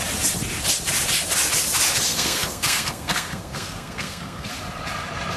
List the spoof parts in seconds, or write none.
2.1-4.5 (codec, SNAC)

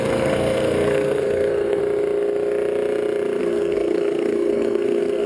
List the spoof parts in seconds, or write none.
0.0-1.8 (codec, SNAC); 3.4-5.3

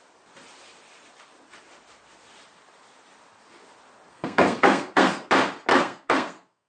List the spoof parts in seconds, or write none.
4.1-5.3 (codec, SNAC); 5.7-6.7

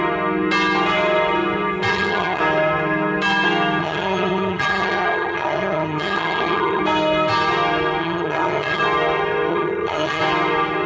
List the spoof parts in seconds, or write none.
1.9-2.4 (vocoder, HiFi-GAN); 3.8-6.8; 8.0-8.8; 9.5-10.2

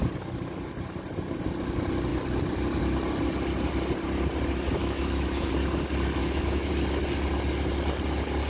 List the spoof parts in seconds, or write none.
4.8-5.5 (autoencoder, DAC-VAE); 6.2-6.7

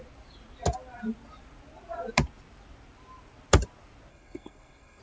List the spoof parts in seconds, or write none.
4.1-5.0 (codec, SNAC)